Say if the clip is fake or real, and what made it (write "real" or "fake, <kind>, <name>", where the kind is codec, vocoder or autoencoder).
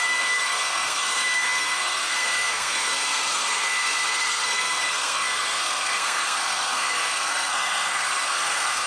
fake, codec, SNAC